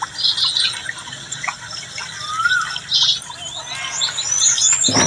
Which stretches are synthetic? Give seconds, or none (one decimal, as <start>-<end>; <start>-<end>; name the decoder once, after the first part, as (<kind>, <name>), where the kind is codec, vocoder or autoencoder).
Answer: 1.0-1.6 (vocoder, Vocos)